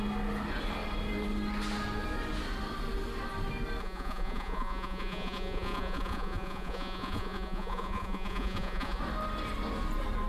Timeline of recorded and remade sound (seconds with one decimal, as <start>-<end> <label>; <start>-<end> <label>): 0.0-3.8 recorded; 3.8-9.0 remade; 9.0-10.3 recorded